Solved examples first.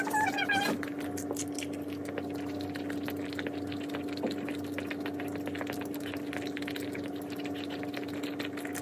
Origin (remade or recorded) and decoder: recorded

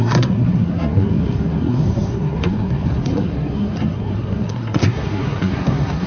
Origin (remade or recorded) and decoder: remade, codec, SNAC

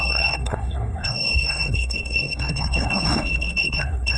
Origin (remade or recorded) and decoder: remade, codec, SNAC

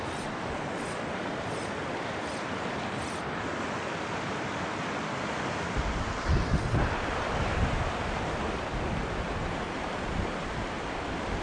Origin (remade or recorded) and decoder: recorded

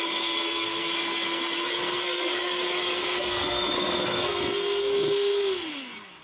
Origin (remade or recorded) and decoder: remade, codec, SNAC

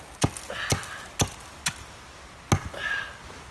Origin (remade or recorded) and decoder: recorded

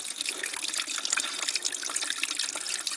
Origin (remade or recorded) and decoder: recorded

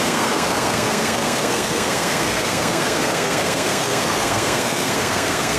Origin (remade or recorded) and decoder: remade, codec, SNAC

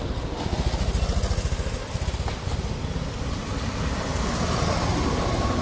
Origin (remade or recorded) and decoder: recorded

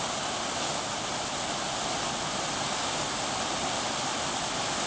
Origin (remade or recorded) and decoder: recorded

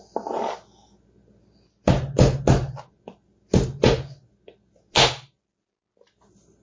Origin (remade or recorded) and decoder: recorded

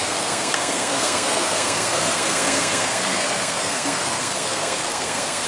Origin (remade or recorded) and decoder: remade, codec, SNAC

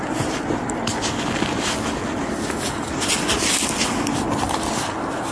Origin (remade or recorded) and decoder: recorded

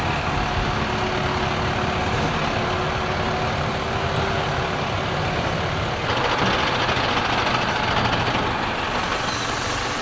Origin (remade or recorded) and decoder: recorded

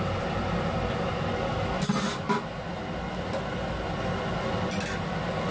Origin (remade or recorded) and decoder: recorded